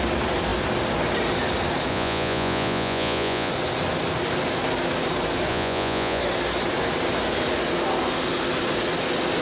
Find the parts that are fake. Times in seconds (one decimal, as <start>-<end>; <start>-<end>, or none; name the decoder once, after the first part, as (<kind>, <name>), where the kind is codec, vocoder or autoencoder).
1.9-3.5 (vocoder, Vocos); 5.5-6.2